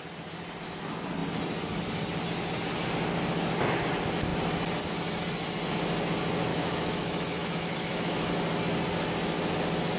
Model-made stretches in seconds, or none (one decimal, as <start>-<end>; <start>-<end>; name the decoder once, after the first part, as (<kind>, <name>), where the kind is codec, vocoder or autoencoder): 6.5-8.3 (autoencoder, DAC-VAE)